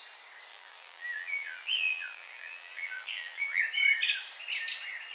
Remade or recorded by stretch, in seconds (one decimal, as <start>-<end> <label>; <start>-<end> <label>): 0.0-0.5 recorded; 0.5-3.6 remade; 3.6-5.1 recorded

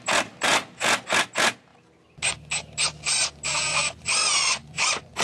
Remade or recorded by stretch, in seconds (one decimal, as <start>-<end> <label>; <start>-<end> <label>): 0.0-3.7 recorded; 3.7-5.2 remade

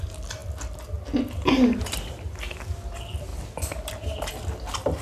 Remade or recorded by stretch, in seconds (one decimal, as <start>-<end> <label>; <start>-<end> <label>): 0.0-5.0 recorded

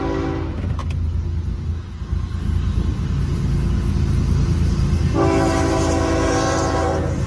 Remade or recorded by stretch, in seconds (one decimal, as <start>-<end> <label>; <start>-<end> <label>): 0.0-7.3 recorded

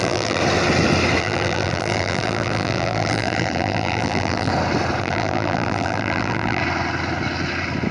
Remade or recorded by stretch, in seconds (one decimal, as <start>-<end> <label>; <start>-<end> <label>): 0.0-0.4 remade; 0.4-1.2 recorded; 1.2-4.5 remade; 4.5-5.0 recorded; 5.0-6.6 remade; 6.6-7.9 recorded

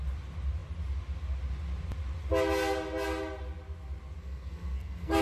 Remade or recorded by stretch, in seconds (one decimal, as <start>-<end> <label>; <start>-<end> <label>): 0.0-4.2 recorded; 4.2-5.2 remade